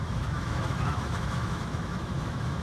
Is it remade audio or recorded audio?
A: remade